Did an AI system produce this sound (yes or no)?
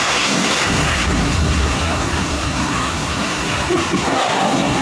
yes